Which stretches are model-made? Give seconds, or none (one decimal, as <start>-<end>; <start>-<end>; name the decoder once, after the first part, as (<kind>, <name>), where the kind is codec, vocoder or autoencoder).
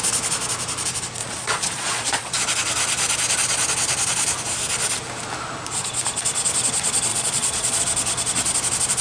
1.2-2.3 (vocoder, Vocos); 7.1-7.8